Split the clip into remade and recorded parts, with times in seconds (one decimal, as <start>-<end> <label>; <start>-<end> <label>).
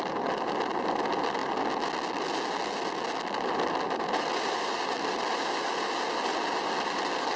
0.0-7.4 recorded